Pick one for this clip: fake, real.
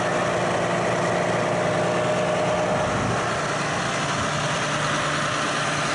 real